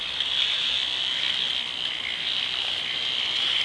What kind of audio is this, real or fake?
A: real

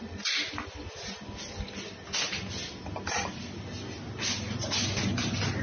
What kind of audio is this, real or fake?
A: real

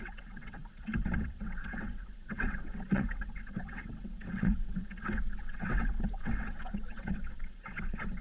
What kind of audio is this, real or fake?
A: fake